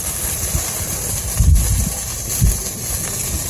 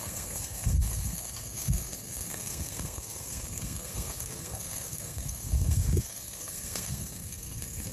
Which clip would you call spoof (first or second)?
second